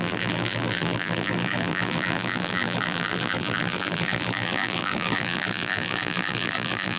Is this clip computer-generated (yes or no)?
yes